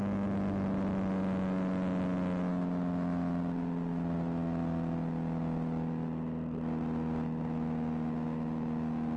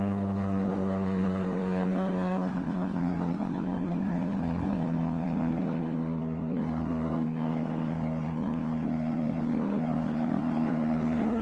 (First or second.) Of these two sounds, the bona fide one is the first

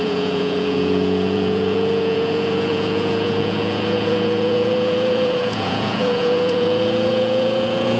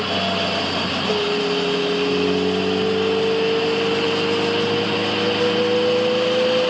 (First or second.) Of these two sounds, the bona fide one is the second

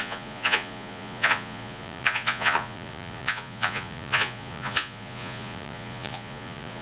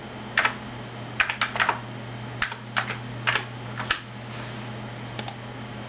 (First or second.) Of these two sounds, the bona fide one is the second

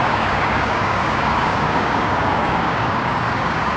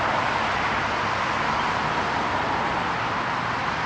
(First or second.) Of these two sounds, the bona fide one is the second